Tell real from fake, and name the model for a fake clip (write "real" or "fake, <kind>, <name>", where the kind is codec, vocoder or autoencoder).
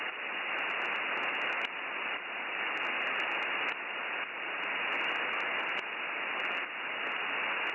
real